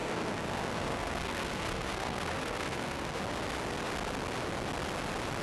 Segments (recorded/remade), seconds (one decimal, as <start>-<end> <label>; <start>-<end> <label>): 0.0-3.2 remade; 3.2-5.4 recorded